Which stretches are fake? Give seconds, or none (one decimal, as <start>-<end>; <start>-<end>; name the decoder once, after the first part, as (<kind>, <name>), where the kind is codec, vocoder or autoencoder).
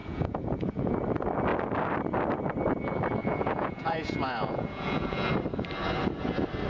0.0-1.0 (vocoder, Vocos); 3.2-5.3